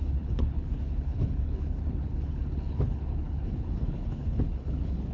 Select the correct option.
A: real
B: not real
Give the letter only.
B